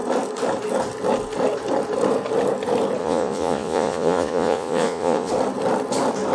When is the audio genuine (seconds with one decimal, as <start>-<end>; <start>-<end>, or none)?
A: 0.0-3.0; 5.3-6.3